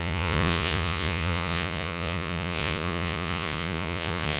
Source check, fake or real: fake